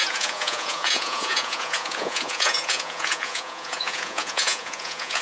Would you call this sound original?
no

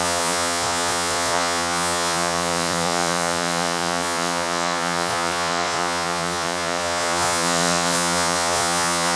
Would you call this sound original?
no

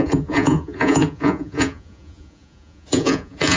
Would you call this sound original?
no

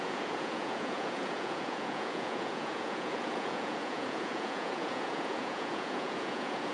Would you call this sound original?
no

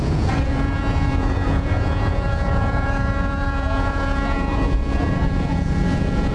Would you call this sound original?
no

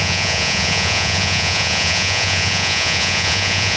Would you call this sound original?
no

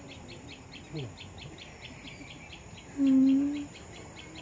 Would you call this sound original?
yes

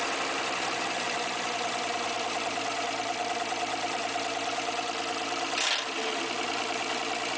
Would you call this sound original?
yes